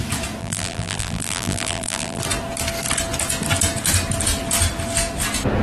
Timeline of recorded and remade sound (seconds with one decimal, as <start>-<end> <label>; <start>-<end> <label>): 0.0-0.4 recorded; 0.4-2.2 remade; 2.2-5.6 recorded